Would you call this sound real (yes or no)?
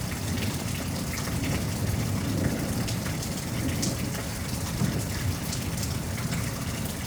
no